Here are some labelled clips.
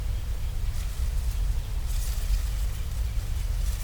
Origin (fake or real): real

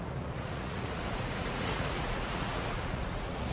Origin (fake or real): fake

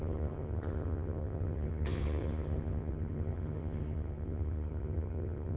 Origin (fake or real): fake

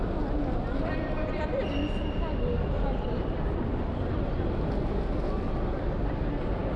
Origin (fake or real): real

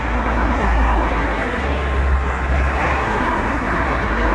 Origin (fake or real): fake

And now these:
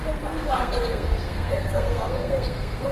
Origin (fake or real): fake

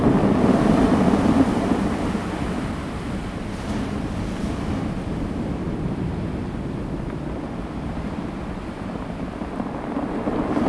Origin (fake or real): real